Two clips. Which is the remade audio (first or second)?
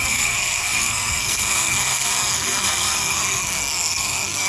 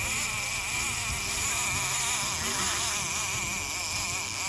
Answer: first